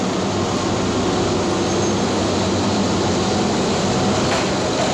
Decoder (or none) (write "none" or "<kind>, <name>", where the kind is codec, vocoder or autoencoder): none